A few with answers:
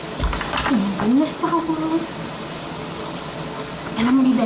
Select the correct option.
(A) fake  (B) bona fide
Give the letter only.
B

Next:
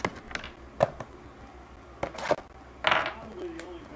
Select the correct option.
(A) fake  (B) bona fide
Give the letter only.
B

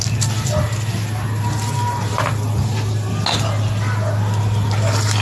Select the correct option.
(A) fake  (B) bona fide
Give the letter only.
B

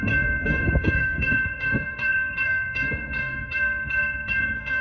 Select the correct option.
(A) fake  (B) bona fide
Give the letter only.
A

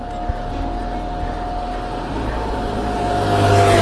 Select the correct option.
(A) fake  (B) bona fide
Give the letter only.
B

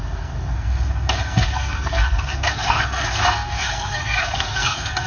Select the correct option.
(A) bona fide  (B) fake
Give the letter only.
B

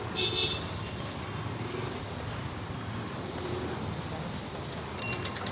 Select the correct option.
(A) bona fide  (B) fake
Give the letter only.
A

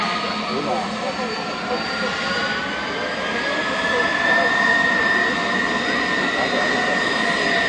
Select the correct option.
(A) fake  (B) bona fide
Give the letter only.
B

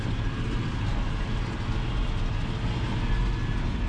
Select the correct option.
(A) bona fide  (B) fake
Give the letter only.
A